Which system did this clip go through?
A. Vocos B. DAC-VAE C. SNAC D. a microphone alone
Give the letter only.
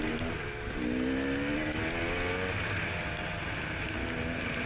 D